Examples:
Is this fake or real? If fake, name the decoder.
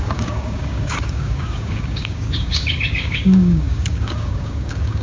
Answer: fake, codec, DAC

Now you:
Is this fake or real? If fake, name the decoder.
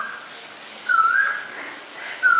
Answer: fake, codec, DAC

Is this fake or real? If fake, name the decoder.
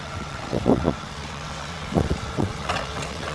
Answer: fake, vocoder, WaveNeXt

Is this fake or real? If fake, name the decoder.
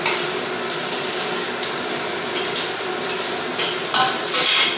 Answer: real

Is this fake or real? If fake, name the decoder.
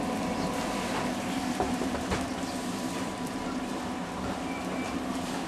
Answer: fake, vocoder, BigVGAN v2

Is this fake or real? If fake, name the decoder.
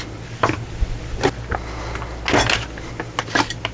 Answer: real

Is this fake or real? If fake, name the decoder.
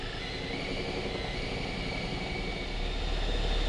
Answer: real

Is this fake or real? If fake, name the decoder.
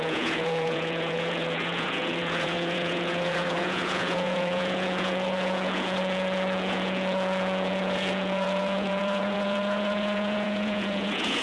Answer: fake, vocoder, Vocos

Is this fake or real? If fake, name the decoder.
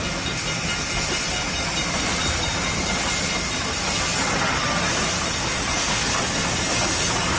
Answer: real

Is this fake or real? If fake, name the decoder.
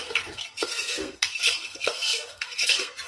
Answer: fake, codec, SNAC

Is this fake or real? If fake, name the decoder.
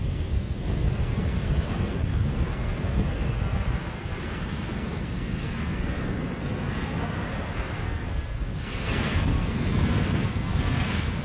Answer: fake, codec, SNAC